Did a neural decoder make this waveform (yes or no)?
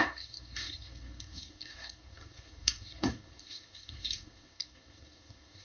yes